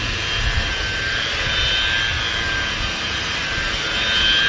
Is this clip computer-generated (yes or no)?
no